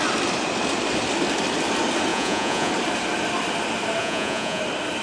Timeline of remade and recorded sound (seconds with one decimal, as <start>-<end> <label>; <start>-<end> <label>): 0.0-2.1 recorded; 2.1-2.7 remade; 2.7-4.0 recorded; 4.0-4.6 remade; 4.6-5.0 recorded